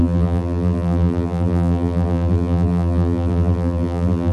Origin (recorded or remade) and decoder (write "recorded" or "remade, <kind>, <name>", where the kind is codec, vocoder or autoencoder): remade, vocoder, BigVGAN v2